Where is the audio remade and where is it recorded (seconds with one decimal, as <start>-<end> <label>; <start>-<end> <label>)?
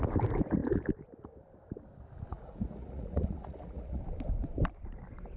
0.0-2.3 recorded; 2.3-4.0 remade; 4.0-5.4 recorded